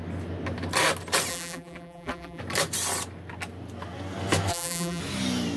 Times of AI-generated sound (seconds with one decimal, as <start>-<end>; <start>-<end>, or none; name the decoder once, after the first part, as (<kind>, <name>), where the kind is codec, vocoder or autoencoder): 1.3-2.4 (vocoder, BigVGAN v2); 4.5-5.0